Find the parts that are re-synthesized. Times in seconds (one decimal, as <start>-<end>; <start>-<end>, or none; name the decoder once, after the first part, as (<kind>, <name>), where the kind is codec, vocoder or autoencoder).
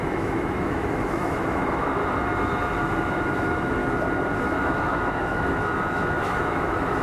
0.0-2.0 (autoencoder, DAC-VAE); 2.8-3.8; 4.4-7.0